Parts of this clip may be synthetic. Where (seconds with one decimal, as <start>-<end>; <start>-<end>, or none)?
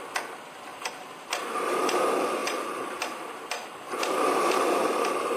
0.7-2.0; 2.4-5.4